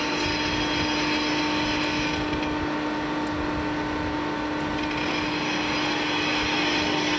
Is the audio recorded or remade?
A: recorded